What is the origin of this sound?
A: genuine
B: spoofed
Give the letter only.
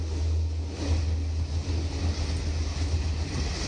A